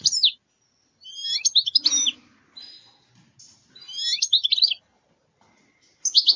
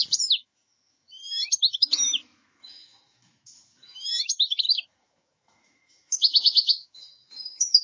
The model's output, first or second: second